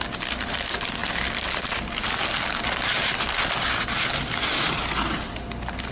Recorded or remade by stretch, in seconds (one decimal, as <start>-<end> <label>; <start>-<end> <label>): 0.0-5.9 recorded